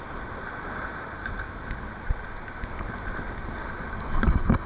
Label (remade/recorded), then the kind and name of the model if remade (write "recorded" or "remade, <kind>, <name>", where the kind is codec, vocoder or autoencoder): recorded